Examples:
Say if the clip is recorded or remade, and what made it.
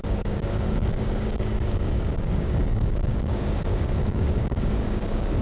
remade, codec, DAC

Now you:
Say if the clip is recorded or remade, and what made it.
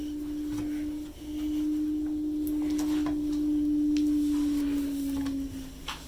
recorded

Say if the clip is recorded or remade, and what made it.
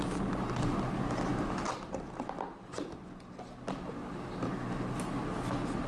recorded